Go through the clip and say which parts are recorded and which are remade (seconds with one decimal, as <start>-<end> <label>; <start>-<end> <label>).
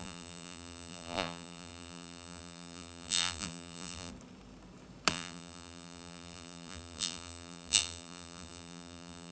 0.0-4.1 remade; 4.1-5.1 recorded; 5.1-9.3 remade